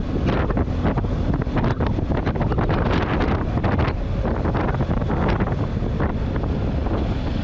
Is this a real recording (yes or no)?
yes